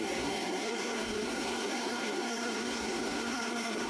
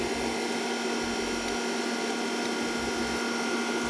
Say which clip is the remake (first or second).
first